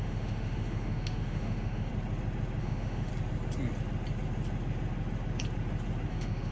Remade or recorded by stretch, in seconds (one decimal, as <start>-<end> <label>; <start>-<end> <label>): 0.0-1.9 remade; 1.9-2.6 recorded; 2.6-3.1 remade; 3.1-6.1 recorded; 6.1-6.5 remade